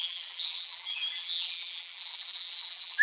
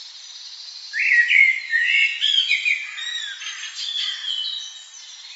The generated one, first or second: first